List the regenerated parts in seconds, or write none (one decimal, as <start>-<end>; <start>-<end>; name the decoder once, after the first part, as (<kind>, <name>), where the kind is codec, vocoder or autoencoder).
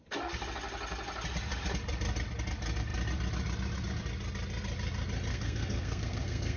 5.3-6.6 (codec, SNAC)